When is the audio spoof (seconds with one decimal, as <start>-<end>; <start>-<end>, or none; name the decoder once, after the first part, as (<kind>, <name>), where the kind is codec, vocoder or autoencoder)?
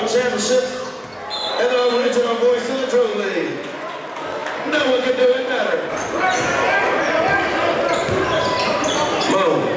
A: 3.1-3.9 (vocoder, Vocos)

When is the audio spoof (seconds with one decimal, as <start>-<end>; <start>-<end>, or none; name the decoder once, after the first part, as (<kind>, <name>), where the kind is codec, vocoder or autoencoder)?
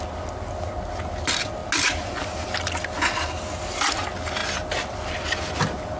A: none